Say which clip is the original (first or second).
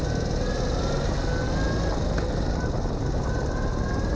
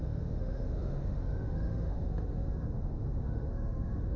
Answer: first